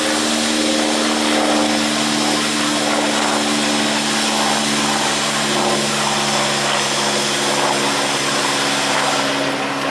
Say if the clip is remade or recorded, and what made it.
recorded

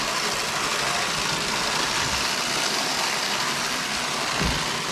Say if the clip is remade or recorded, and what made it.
recorded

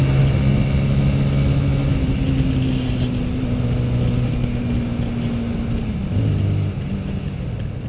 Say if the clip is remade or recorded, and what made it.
recorded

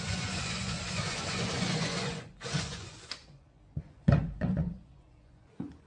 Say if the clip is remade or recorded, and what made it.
remade, vocoder, Vocos